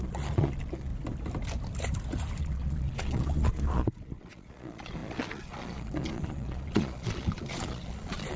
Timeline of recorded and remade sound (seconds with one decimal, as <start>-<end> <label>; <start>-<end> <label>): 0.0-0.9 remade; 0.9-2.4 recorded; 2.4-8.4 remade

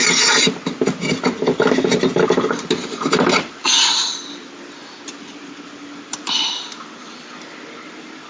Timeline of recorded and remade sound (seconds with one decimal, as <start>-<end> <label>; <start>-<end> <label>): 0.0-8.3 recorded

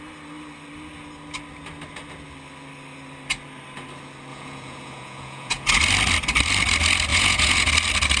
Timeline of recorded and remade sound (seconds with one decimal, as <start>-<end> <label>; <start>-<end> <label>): 0.0-4.3 recorded; 4.3-5.8 remade; 5.8-7.1 recorded; 7.1-7.7 remade; 7.7-8.2 recorded

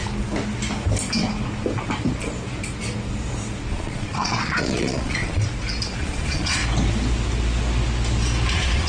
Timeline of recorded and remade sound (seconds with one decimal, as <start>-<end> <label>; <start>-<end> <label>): 0.0-3.7 recorded; 3.7-5.4 remade; 5.4-6.0 recorded; 6.0-6.6 remade; 6.6-8.5 recorded; 8.5-8.9 remade

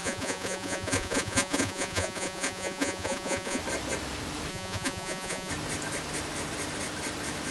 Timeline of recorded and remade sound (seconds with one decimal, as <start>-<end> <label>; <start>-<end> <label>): 0.0-3.6 remade; 3.6-4.5 recorded; 4.5-5.5 remade; 5.5-7.5 recorded

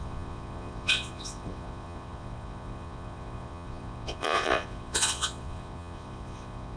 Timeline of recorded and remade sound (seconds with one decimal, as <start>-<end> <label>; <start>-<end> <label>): 0.0-6.8 remade